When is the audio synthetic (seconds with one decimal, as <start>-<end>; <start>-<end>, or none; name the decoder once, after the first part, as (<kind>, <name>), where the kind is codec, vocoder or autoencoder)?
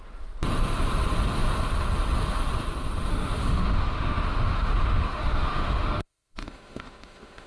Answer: 3.1-7.5 (autoencoder, DAC-VAE)